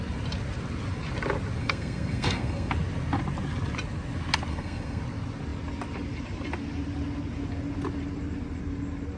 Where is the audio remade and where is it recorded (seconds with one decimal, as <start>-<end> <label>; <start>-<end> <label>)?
0.0-1.6 recorded; 1.6-2.7 remade; 2.7-4.5 recorded; 4.5-5.0 remade; 5.0-9.2 recorded

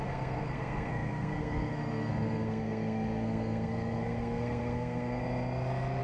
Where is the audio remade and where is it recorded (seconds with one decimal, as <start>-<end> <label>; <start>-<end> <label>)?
0.0-5.2 remade; 5.2-6.0 recorded